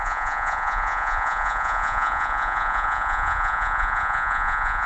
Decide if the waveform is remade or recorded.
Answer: remade